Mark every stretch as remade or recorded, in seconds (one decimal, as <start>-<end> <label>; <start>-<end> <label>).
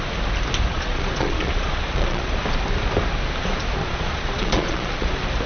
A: 0.0-0.7 recorded; 0.7-2.4 remade; 2.4-3.8 recorded; 3.8-5.1 remade; 5.1-5.5 recorded